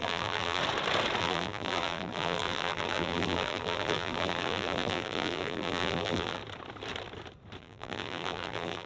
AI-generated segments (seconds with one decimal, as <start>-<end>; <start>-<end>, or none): 0.0-0.6; 1.2-6.4; 7.6-8.9